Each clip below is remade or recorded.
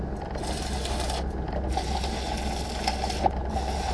recorded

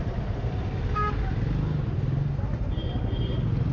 recorded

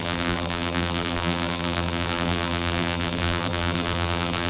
remade